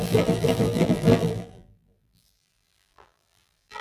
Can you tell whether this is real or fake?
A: fake